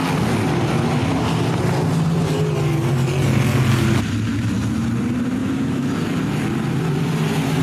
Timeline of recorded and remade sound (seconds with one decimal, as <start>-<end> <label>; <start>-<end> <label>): 0.0-5.4 recorded; 5.4-5.9 remade; 5.9-7.6 recorded